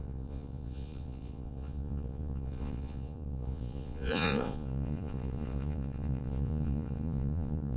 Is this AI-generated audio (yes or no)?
yes